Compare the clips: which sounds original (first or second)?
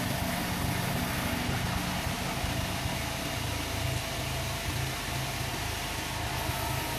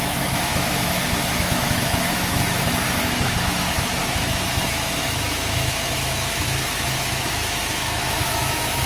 first